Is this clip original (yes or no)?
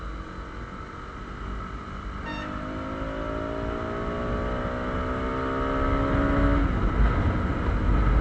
yes